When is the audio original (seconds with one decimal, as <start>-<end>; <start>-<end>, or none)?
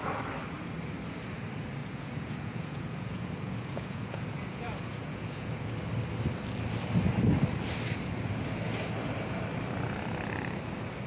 0.0-1.8; 5.7-11.1